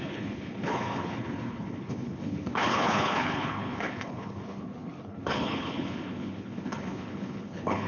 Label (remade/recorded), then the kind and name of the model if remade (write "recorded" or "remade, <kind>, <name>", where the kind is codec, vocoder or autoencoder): remade, codec, HILCodec